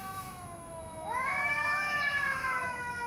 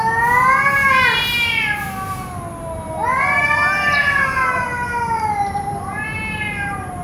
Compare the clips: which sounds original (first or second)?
second